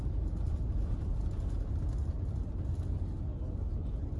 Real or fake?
real